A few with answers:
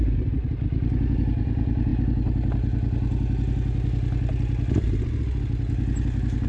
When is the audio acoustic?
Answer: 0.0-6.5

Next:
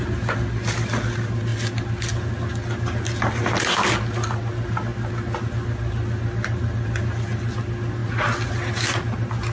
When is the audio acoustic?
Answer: 0.0-9.5

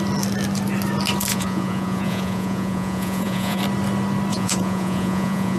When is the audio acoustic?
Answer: 0.0-1.3; 3.6-4.3

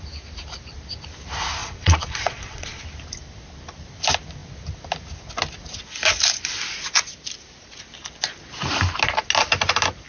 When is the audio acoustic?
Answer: 0.0-1.6; 2.8-10.1

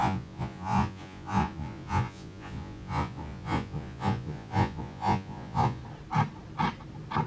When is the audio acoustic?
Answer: 5.8-7.3

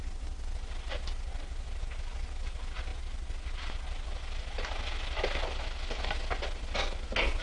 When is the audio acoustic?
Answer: 0.0-7.4

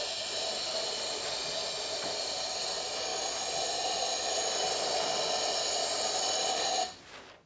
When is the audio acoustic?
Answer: 0.0-7.5